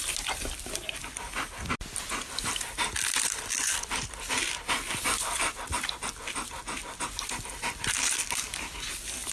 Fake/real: real